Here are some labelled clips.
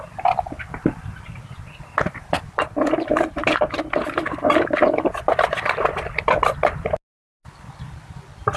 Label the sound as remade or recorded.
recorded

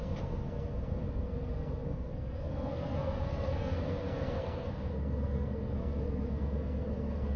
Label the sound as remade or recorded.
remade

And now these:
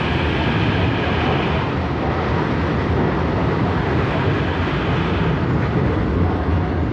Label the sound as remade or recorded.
recorded